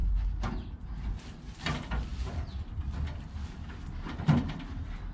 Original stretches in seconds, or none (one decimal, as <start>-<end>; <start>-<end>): 0.0-5.1